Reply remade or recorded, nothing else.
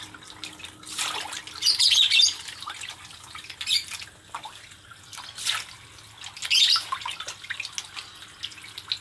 recorded